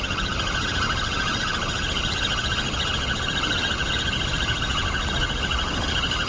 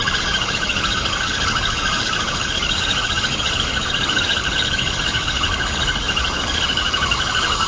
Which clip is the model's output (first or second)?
second